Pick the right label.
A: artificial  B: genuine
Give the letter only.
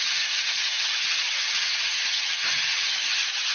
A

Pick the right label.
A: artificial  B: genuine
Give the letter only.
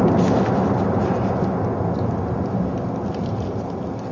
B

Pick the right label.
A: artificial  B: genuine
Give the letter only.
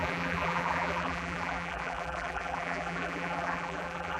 A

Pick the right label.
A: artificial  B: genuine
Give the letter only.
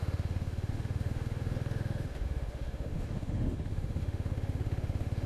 A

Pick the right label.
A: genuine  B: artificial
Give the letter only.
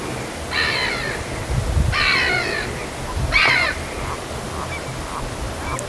A